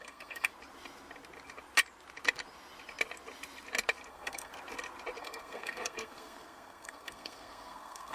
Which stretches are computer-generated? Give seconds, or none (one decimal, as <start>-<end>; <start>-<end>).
0.0-0.5; 4.1-4.5; 5.2-8.1